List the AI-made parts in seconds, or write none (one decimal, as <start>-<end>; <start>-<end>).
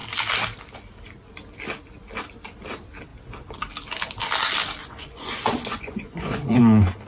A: 4.8-6.6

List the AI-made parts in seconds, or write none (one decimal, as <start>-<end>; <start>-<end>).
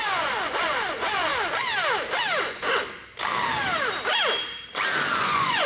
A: 0.0-1.3; 2.4-2.8; 5.2-5.7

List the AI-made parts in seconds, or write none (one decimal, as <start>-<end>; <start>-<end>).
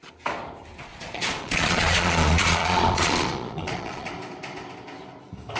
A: 0.9-4.1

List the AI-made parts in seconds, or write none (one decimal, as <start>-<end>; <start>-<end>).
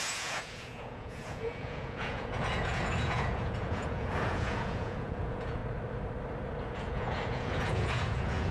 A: 0.0-5.6; 6.6-8.5